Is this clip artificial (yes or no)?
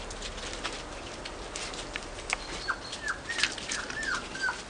no